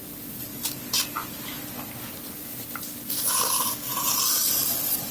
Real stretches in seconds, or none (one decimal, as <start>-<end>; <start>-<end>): 0.0-5.1